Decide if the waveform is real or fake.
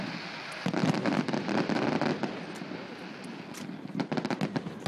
real